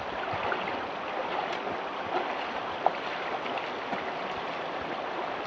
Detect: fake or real real